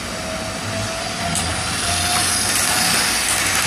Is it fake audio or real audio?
real